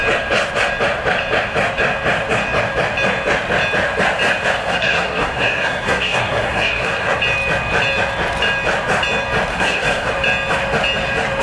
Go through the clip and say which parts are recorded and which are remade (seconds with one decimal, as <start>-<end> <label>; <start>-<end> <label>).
0.0-4.6 recorded; 4.6-7.2 remade; 7.2-9.5 recorded; 9.5-10.1 remade; 10.1-11.4 recorded